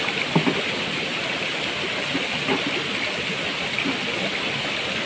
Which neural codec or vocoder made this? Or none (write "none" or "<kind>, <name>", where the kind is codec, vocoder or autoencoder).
none